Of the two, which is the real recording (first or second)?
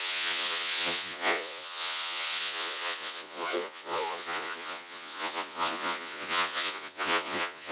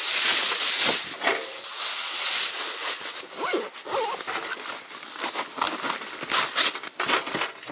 second